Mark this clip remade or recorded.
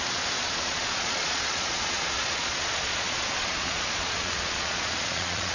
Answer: remade